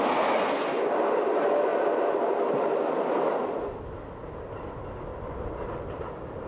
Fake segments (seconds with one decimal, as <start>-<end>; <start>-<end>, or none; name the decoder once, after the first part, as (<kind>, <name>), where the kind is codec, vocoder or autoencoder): none